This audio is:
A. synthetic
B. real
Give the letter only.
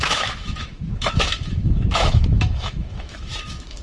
A